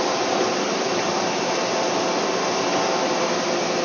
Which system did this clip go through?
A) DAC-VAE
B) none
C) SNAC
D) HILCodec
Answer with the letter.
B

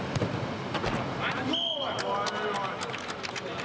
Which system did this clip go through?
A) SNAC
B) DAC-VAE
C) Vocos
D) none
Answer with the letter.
D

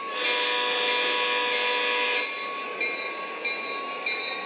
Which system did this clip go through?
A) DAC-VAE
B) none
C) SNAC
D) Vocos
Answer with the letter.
B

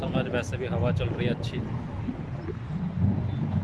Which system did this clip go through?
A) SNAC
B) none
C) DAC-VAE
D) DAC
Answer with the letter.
B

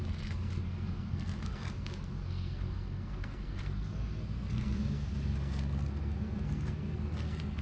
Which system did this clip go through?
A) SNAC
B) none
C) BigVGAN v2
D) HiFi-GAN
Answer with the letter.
A